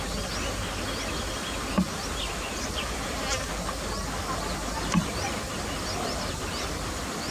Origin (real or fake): real